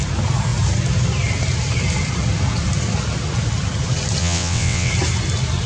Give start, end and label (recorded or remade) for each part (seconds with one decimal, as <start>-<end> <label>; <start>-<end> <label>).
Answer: 0.0-4.2 recorded; 4.2-4.9 remade; 4.9-5.7 recorded